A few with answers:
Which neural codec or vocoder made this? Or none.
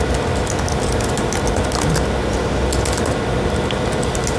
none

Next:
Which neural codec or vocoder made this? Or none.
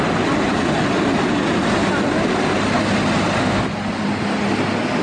none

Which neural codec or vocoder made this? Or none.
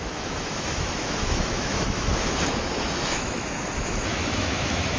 autoencoder, DAC-VAE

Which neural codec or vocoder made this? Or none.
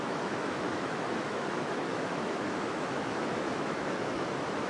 autoencoder, DAC-VAE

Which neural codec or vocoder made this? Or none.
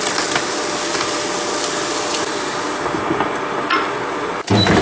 none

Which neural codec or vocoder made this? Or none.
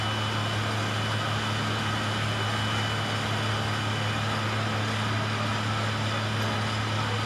none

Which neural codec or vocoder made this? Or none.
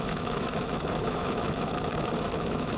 autoencoder, DAC-VAE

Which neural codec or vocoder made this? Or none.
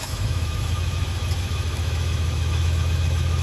autoencoder, DAC-VAE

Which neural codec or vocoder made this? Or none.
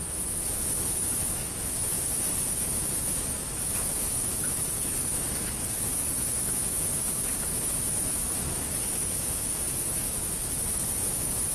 autoencoder, DAC-VAE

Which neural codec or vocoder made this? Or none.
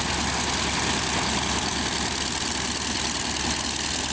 none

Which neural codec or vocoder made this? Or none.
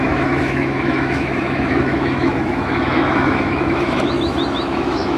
autoencoder, DAC-VAE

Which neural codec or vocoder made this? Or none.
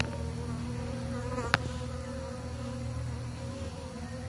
none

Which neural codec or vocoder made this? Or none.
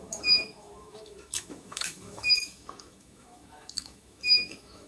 autoencoder, DAC-VAE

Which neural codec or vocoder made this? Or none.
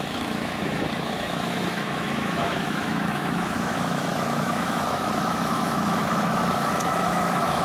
autoencoder, DAC-VAE